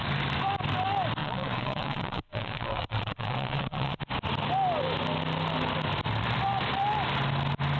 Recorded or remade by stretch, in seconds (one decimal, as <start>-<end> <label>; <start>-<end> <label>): 0.0-1.2 recorded; 1.2-4.0 remade; 4.0-7.8 recorded